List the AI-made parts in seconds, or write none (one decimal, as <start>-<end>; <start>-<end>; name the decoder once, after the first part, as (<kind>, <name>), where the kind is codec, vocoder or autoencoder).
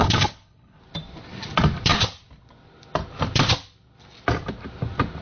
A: 0.0-0.8 (codec, HILCodec)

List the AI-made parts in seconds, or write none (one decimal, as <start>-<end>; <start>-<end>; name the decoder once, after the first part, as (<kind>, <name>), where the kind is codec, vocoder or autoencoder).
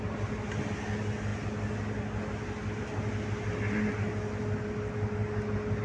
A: none